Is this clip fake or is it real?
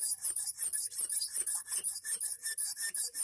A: fake